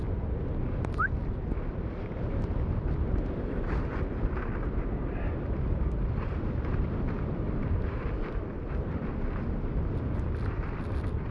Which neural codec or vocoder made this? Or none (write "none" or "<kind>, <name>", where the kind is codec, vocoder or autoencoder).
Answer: none